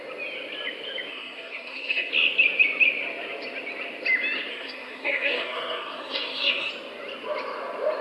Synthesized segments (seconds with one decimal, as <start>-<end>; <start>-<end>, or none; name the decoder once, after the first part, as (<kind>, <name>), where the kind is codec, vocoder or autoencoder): 1.1-2.1 (codec, SNAC); 4.5-6.7